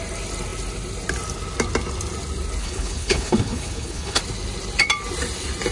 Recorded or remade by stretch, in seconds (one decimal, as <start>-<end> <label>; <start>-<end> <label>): 0.0-2.6 recorded; 2.6-4.2 remade; 4.2-5.7 recorded